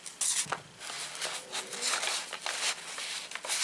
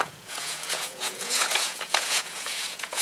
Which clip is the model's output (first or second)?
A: second